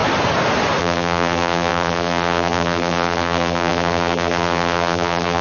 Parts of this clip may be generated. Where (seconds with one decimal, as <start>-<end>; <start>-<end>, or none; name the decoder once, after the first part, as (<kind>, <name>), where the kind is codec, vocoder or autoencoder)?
0.8-5.4 (vocoder, BigVGAN v2)